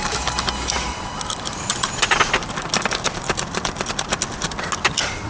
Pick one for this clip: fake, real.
real